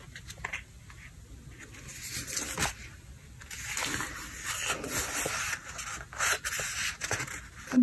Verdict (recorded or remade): recorded